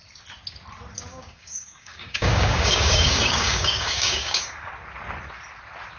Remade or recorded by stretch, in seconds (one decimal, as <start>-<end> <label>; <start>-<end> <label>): 0.0-1.1 recorded; 1.1-4.7 remade; 4.7-6.0 recorded